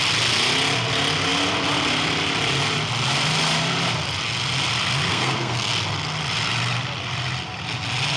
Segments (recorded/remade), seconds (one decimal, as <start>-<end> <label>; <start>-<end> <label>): 0.0-5.1 recorded; 5.1-5.7 remade; 5.7-8.2 recorded